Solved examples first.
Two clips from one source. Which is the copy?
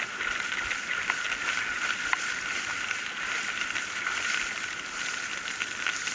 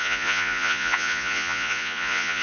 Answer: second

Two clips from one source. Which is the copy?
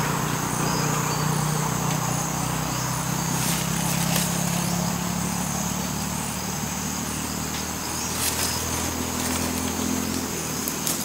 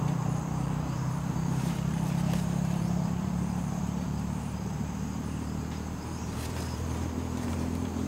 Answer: second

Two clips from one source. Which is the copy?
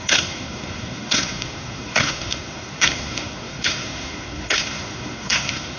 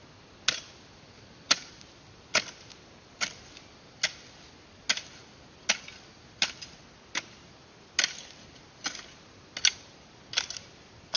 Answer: first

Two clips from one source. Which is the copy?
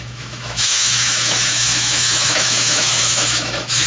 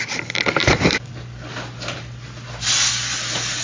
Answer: first